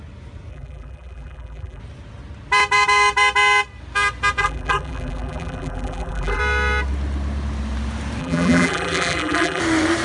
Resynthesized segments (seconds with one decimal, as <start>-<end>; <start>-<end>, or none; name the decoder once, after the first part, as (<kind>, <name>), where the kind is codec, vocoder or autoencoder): 0.5-1.8 (vocoder, BigVGAN v2); 4.4-6.4; 8.2-9.6